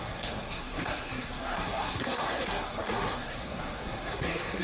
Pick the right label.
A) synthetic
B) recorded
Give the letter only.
A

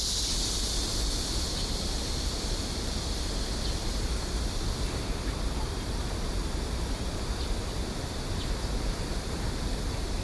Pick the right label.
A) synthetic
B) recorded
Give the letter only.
B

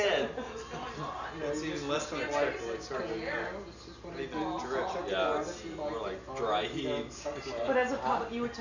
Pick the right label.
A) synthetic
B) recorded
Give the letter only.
B